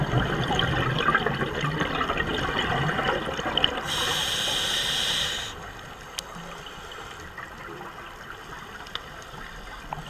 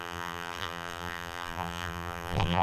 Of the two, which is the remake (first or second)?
second